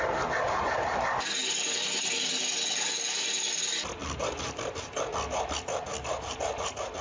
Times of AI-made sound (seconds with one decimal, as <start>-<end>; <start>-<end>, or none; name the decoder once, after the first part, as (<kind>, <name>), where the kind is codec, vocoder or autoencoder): none